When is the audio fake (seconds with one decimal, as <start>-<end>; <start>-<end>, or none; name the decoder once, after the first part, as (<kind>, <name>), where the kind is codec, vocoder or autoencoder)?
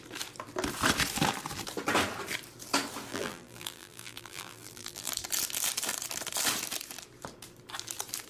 3.1-5.1 (vocoder, BigVGAN v2)